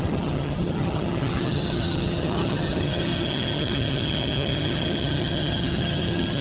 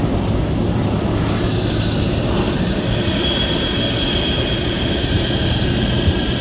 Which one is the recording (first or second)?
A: second